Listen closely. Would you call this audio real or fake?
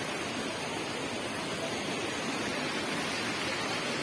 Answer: real